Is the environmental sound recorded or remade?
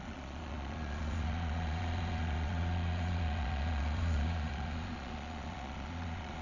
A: remade